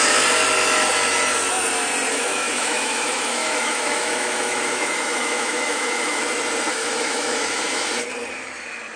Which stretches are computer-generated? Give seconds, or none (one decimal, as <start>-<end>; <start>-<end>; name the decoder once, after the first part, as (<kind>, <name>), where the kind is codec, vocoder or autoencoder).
2.1-6.2 (autoencoder, DAC-VAE); 6.7-7.9